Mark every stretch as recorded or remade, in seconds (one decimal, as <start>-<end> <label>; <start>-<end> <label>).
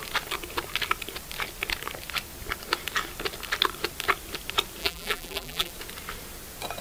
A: 0.0-4.8 recorded; 4.8-5.7 remade; 5.7-6.8 recorded